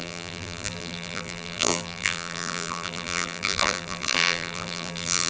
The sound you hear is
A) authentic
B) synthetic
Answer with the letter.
B